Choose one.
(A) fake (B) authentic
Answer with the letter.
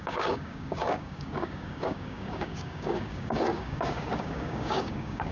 A